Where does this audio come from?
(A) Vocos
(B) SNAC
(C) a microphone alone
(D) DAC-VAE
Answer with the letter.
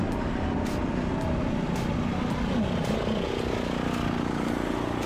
C